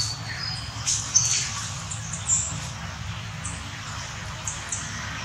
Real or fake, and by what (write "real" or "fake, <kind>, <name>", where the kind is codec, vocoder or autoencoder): real